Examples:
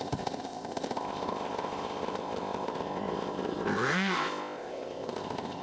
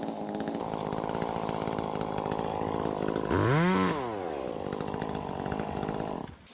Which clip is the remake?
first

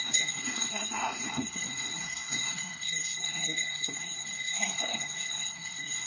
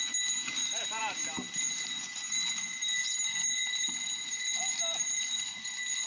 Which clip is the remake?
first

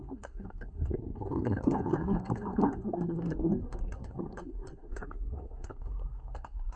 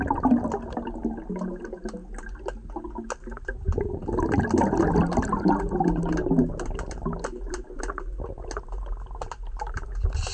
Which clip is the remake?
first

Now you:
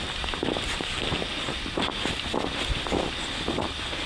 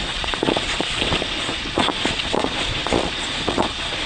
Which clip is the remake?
second